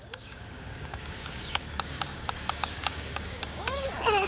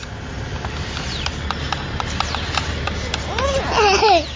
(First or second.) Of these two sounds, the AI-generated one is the first